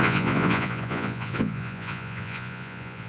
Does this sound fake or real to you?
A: fake